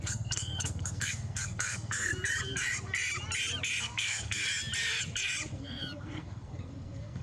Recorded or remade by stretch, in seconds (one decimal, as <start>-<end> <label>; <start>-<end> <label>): 0.0-2.1 remade; 2.1-3.8 recorded; 3.8-4.4 remade; 4.4-5.5 recorded; 5.5-7.2 remade